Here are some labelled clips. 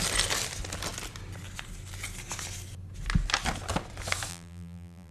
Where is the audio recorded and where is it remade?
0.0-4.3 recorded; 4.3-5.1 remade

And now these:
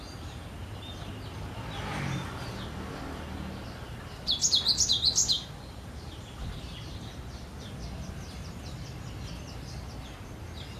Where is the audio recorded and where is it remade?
0.0-5.2 recorded; 5.2-8.1 remade; 8.1-10.8 recorded

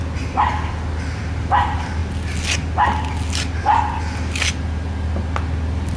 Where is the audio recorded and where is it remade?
0.0-6.0 recorded

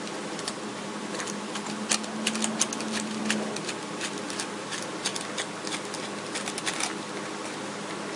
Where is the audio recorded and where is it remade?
0.0-8.2 recorded